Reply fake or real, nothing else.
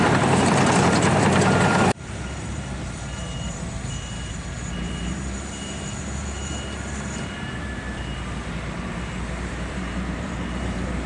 fake